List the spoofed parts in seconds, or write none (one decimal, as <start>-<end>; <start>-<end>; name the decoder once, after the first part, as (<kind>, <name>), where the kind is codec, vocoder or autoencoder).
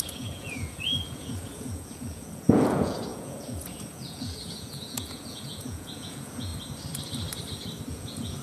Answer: 0.0-6.5 (vocoder, Vocos); 7.9-8.4